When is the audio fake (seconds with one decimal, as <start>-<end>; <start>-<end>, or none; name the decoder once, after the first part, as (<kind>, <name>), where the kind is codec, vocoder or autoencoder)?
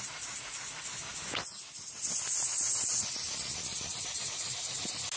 none